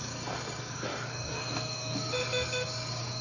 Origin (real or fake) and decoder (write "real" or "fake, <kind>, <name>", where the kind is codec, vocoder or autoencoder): fake, codec, DAC